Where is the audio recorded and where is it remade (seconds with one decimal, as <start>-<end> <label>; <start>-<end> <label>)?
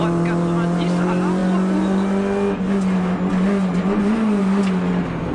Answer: 0.0-5.3 recorded